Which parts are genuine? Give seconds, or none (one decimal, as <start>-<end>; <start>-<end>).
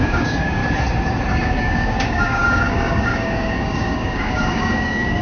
0.6-1.3